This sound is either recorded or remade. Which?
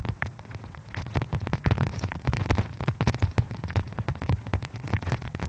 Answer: remade